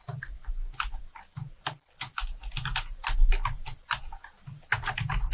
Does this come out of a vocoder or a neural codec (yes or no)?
no